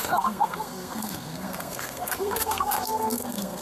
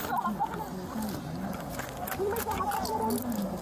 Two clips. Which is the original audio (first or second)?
second